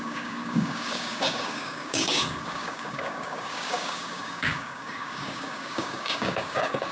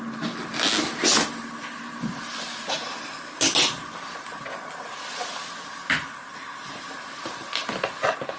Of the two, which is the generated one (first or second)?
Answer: first